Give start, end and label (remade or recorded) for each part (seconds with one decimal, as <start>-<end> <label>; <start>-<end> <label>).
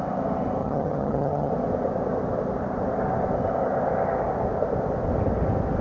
0.0-0.6 recorded; 0.6-1.5 remade; 1.5-5.8 recorded